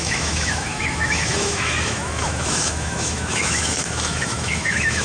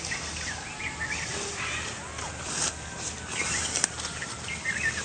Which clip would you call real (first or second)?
second